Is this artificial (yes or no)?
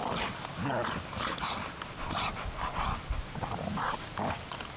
no